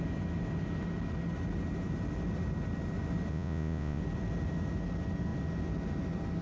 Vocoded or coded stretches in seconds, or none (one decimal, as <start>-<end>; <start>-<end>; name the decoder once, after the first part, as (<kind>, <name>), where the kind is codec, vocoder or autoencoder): 3.3-4.0 (vocoder, Vocos)